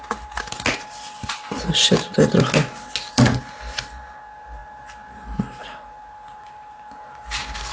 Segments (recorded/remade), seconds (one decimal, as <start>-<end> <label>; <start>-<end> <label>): 0.0-7.7 recorded